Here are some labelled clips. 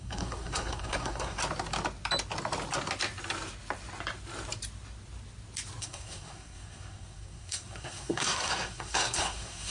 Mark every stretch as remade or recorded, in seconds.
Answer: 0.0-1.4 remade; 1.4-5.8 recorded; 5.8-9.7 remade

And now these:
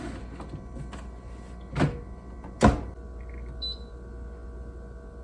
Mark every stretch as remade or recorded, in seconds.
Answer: 0.0-5.2 recorded

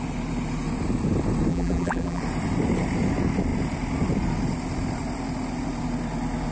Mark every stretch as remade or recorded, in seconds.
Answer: 0.0-1.5 recorded; 1.5-2.2 remade; 2.2-6.5 recorded

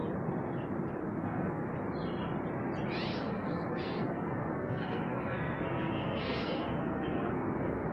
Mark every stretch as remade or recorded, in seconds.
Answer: 0.0-1.0 recorded; 1.0-1.7 remade; 1.7-3.2 recorded; 3.2-7.9 remade

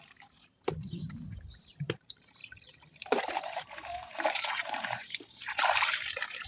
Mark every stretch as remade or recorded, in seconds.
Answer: 0.0-2.4 remade; 2.4-3.5 recorded; 3.5-6.5 remade

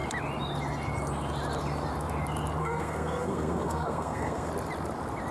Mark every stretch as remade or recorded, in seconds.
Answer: 0.0-2.6 recorded; 2.6-4.5 remade; 4.5-5.3 recorded